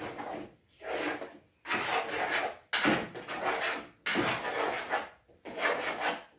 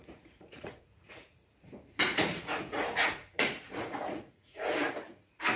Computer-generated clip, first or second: second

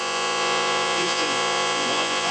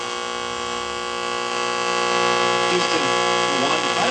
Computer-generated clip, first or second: first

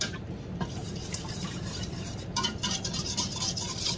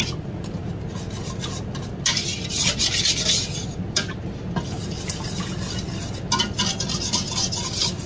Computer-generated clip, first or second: first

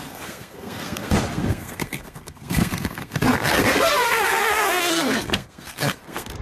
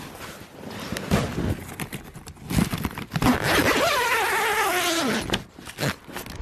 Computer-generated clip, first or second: first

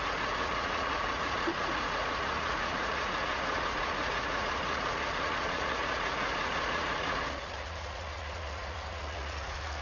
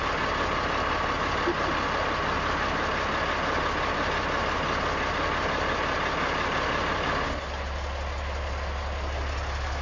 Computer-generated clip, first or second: first